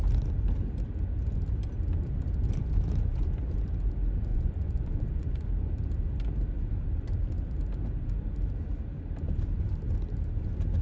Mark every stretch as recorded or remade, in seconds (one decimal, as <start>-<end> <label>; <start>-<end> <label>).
0.0-4.3 recorded; 4.3-5.4 remade; 5.4-10.8 recorded